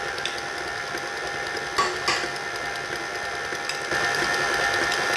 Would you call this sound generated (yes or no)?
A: no